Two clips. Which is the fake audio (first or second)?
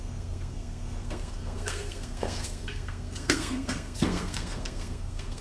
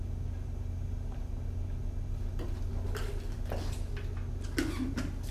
first